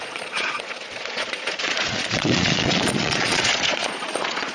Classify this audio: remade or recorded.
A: remade